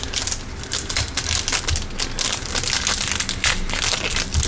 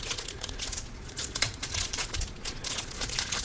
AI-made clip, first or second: second